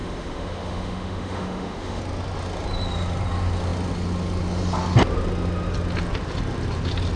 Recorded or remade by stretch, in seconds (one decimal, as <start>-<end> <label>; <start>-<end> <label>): 0.0-2.0 remade; 2.0-7.2 recorded